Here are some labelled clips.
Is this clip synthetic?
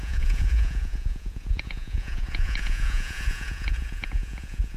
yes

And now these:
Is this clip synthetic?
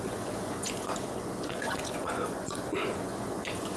yes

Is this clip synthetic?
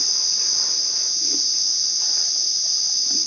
yes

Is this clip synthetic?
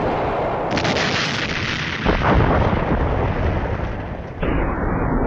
no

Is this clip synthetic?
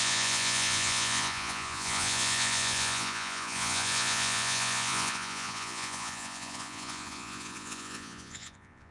yes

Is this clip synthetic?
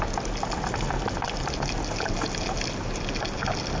no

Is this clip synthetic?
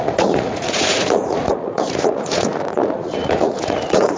yes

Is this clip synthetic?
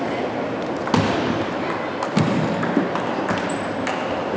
no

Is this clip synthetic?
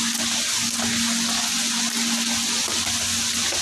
no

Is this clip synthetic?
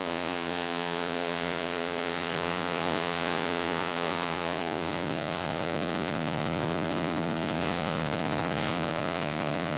yes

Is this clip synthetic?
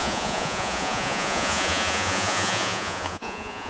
yes